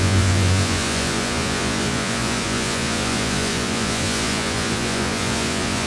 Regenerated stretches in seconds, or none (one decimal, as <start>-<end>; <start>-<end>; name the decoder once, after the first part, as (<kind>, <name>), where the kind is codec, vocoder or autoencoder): 0.0-5.9 (vocoder, Vocos)